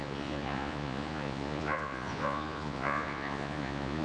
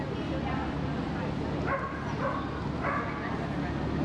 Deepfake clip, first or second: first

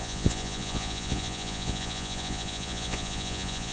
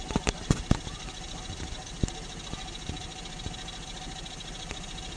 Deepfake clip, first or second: first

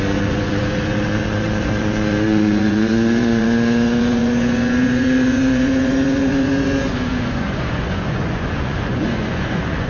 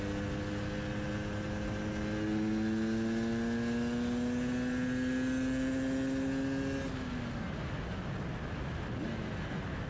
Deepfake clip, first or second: first